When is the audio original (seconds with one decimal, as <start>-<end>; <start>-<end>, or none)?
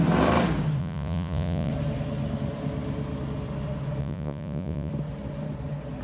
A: 0.0-0.8; 1.7-4.0; 4.9-6.0